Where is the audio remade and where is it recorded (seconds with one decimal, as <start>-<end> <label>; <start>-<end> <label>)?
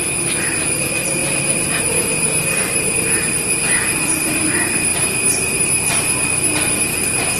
0.0-7.4 recorded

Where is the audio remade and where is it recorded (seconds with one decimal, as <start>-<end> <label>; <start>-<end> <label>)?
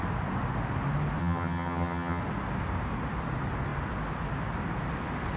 0.0-1.2 recorded; 1.2-2.2 remade; 2.2-5.4 recorded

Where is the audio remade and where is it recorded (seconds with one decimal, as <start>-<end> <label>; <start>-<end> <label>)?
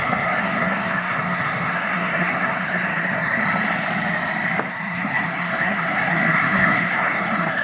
0.0-3.4 remade; 3.4-4.7 recorded; 4.7-7.6 remade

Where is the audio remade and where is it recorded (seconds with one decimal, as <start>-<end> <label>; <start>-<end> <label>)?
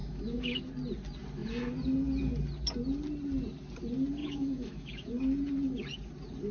0.0-0.6 remade; 0.6-4.2 recorded; 4.2-5.1 remade; 5.1-6.5 recorded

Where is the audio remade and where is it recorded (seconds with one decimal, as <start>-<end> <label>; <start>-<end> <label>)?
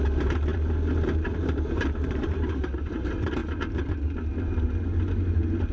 0.0-3.4 remade; 3.4-5.7 recorded